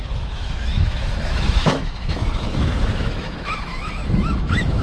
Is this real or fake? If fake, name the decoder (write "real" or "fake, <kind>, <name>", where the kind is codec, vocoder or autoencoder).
fake, autoencoder, DAC-VAE